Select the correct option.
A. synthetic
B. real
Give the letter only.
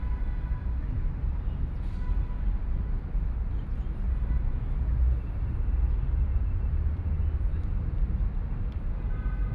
B